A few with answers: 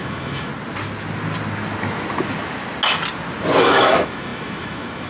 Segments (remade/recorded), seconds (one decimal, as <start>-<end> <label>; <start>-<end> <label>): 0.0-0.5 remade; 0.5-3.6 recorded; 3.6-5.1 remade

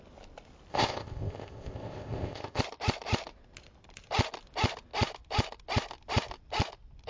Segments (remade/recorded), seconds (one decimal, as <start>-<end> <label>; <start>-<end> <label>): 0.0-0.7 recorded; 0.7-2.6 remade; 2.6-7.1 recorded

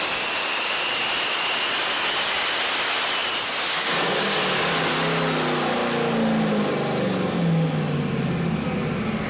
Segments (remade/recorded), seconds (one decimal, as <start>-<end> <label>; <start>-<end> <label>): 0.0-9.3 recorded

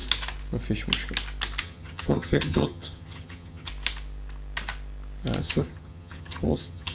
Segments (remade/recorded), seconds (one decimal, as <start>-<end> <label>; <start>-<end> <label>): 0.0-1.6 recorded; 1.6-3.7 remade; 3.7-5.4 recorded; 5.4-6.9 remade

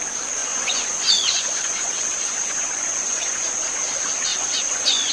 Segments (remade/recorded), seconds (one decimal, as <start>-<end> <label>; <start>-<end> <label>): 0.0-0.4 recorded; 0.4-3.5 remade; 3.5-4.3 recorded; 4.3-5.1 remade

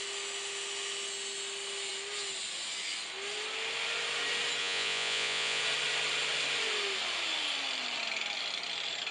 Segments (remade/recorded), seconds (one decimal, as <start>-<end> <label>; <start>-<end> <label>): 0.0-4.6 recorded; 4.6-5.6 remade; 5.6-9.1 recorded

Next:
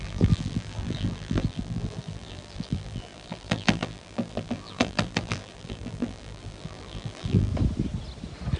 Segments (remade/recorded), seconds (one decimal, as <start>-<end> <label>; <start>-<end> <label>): 0.0-7.5 remade; 7.5-8.6 recorded

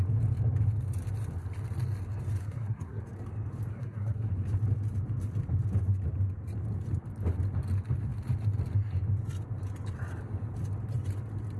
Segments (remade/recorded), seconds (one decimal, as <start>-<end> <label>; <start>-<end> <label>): 0.0-2.4 recorded; 2.4-3.0 remade; 3.0-3.7 recorded; 3.7-4.3 remade; 4.3-11.6 recorded